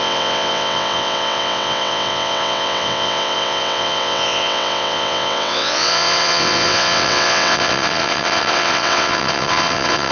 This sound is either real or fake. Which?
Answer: fake